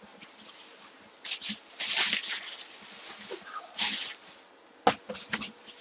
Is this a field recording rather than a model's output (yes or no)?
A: yes